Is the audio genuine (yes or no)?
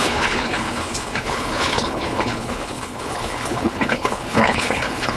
no